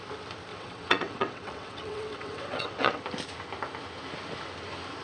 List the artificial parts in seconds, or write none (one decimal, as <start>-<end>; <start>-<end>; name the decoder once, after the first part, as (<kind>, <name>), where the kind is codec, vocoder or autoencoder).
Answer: 0.5-3.0 (vocoder, WaveNeXt)